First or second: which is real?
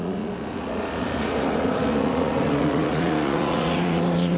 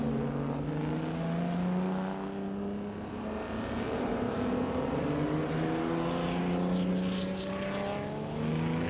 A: second